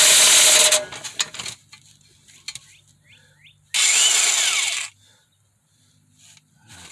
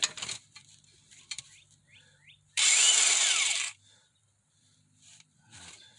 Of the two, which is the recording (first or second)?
first